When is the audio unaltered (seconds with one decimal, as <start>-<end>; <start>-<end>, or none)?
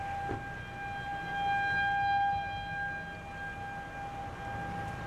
0.0-5.1